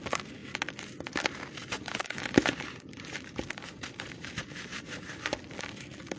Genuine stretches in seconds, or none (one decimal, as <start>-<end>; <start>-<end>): 0.0-1.6; 5.3-6.2